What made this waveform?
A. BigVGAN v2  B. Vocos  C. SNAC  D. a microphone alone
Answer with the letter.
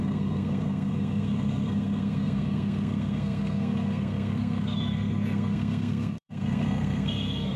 C